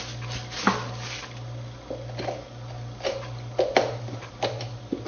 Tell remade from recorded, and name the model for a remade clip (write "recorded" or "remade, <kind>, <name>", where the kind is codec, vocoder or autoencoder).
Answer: recorded